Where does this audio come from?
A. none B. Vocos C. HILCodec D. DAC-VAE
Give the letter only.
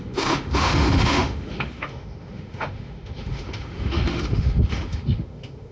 D